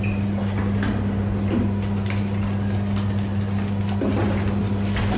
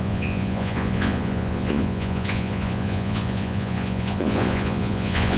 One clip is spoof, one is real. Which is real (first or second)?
first